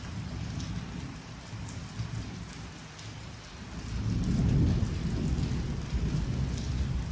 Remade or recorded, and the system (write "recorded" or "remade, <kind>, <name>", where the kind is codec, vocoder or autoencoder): recorded